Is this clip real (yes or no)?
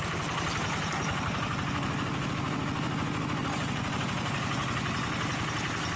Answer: yes